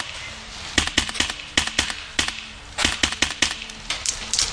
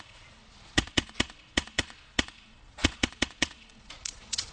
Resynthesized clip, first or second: second